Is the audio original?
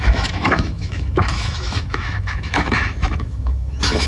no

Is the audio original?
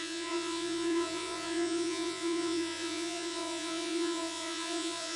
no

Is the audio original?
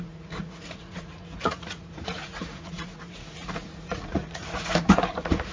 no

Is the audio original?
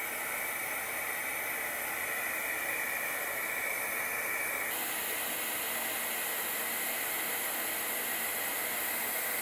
yes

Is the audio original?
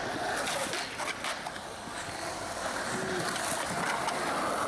yes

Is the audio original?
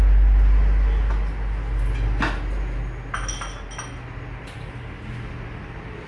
yes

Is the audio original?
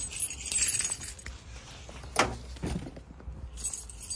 yes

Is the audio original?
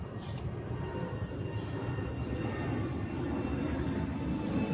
yes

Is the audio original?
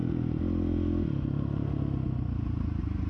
yes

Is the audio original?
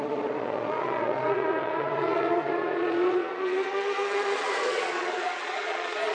no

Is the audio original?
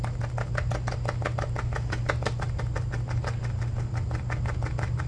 yes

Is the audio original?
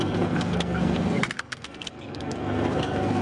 no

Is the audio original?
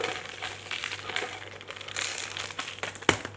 yes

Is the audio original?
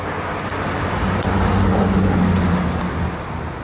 yes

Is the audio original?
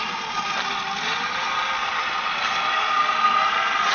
yes